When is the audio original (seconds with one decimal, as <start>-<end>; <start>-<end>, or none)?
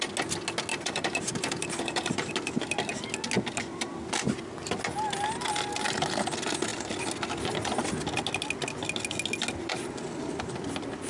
0.0-0.7; 2.3-11.1